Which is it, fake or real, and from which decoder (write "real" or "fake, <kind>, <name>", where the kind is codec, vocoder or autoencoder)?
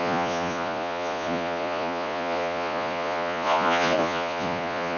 fake, vocoder, Vocos